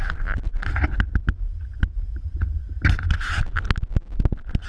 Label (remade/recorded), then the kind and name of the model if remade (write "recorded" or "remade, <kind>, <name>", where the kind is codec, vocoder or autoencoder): recorded